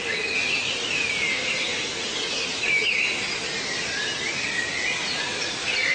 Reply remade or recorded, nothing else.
recorded